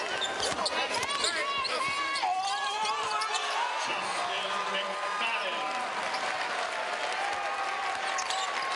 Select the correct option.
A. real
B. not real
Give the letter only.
A